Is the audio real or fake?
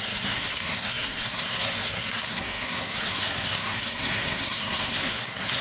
fake